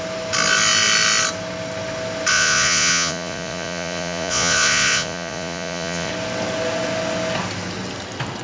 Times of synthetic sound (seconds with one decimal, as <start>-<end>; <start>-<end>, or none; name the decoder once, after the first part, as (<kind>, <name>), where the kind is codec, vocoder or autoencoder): 2.3-6.1 (vocoder, Vocos)